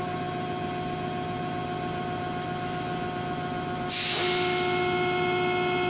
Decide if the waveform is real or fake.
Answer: real